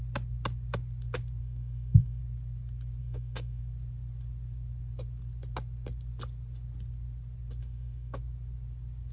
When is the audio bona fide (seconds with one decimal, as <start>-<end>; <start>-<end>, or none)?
0.0-1.4; 2.2-3.0; 3.6-7.6; 8.2-9.1